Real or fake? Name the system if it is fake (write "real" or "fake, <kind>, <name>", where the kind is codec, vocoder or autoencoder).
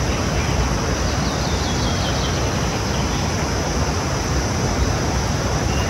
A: real